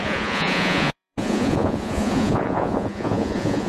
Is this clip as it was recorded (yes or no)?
no